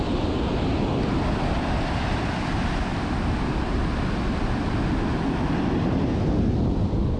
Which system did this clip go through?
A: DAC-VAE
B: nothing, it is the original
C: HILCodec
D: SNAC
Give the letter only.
B